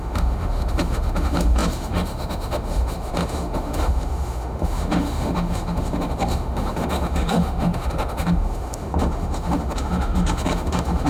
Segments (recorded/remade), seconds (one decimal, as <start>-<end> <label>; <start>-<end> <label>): 0.0-11.1 remade

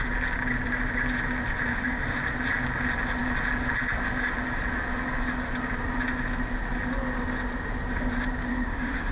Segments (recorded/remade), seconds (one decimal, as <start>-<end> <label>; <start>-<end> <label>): 0.0-1.7 recorded; 1.7-2.2 remade; 2.2-8.5 recorded; 8.5-9.1 remade

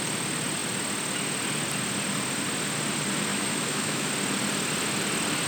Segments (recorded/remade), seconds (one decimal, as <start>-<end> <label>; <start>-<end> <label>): 0.0-3.3 recorded; 3.3-4.1 remade; 4.1-5.5 recorded